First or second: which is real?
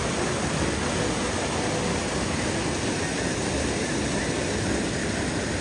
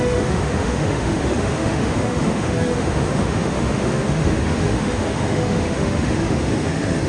first